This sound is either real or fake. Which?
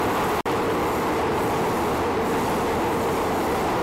real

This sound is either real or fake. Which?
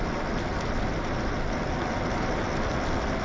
real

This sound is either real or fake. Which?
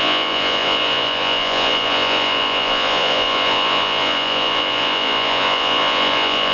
fake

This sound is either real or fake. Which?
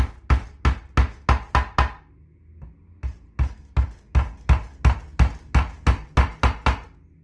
real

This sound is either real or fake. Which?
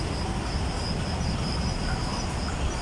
real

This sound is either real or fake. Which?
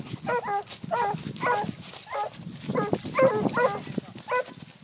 real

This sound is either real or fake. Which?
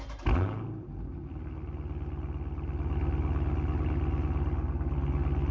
real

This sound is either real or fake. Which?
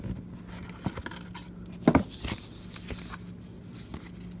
real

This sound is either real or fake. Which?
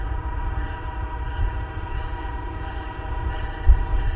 fake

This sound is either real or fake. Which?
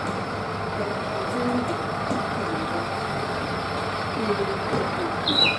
real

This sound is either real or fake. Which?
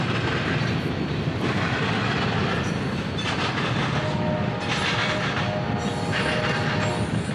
real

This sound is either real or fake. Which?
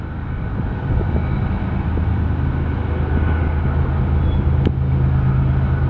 real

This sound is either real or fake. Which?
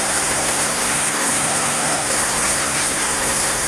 fake